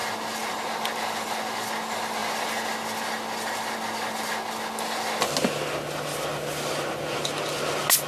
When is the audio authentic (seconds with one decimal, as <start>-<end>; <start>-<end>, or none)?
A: 0.0-8.1